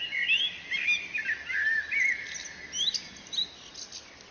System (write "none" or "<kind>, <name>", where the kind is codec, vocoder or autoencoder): none